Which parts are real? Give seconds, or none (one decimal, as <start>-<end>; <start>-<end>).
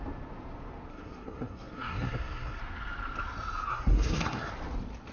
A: 0.0-0.9; 2.6-3.7; 4.5-5.1